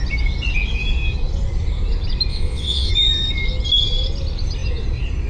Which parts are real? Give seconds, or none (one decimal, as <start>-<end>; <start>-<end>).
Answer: 0.0-2.3; 2.9-5.3